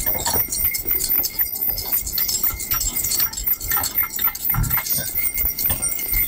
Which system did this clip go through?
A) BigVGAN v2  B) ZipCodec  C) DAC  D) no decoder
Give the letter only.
D